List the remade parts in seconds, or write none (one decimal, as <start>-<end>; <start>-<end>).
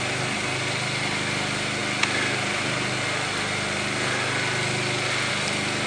none